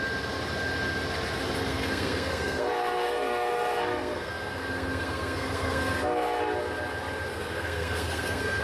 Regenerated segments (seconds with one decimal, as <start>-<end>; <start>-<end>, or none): 1.6-6.4; 7.3-8.6